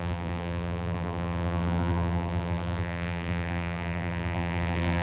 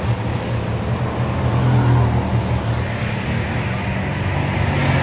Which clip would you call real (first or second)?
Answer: second